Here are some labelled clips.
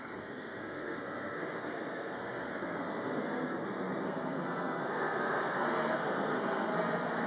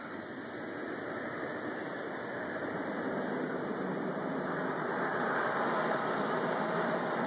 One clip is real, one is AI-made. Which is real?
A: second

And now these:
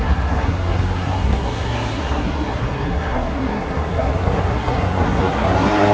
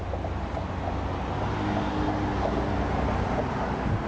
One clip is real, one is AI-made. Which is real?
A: second